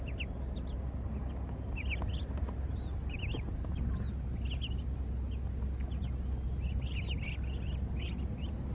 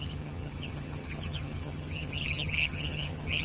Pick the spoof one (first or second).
second